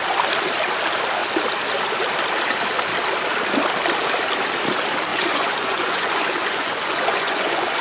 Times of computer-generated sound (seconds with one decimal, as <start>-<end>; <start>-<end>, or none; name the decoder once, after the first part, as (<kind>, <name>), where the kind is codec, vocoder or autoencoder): 5.1-7.8 (vocoder, Vocos)